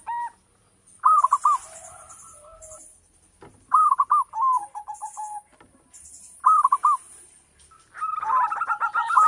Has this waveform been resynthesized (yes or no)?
no